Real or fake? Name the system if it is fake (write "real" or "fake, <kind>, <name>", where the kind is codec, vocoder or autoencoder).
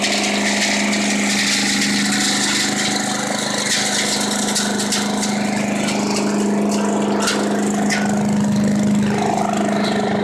real